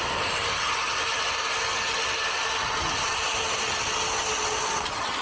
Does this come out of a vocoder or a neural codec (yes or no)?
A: no